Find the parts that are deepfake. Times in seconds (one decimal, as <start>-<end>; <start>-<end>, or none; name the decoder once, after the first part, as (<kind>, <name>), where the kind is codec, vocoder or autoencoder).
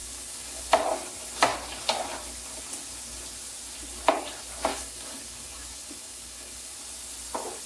0.0-0.6 (codec, DAC); 4.7-6.8